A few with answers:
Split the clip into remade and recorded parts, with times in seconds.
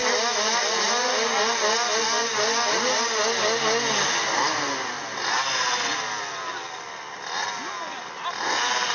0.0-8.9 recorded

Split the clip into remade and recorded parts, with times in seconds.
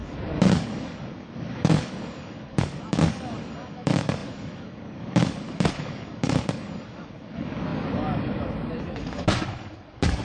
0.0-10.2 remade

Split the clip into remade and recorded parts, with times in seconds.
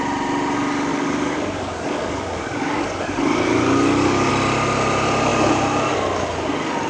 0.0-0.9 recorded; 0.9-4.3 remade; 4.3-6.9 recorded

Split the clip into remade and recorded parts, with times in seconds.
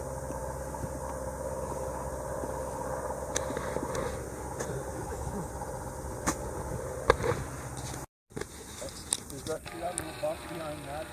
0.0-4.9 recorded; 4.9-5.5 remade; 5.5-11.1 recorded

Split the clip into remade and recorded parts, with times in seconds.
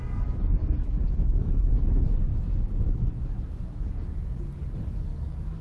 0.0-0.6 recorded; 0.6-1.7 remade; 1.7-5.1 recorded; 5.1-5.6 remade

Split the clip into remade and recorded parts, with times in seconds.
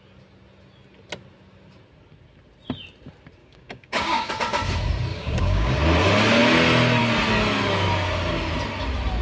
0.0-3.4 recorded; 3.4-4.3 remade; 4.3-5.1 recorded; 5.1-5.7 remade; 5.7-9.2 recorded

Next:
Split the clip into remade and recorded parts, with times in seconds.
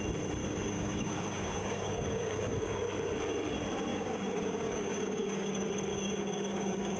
0.0-0.4 recorded; 0.4-2.8 remade; 2.8-3.9 recorded; 3.9-5.5 remade; 5.5-5.9 recorded; 5.9-7.0 remade